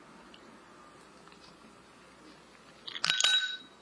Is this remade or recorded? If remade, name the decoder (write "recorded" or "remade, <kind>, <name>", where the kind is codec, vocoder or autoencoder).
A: recorded